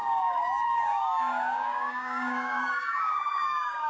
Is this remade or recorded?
remade